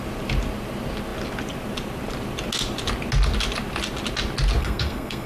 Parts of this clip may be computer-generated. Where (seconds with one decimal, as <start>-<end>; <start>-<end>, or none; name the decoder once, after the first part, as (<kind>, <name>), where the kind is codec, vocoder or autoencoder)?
4.6-5.3 (codec, SNAC)